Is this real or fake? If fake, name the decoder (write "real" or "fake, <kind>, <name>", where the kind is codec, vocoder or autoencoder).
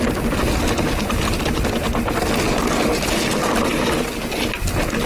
real